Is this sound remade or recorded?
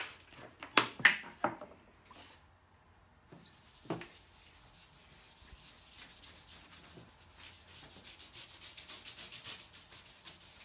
recorded